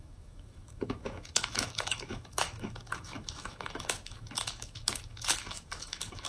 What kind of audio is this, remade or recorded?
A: remade